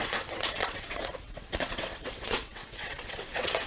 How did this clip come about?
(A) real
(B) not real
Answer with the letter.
B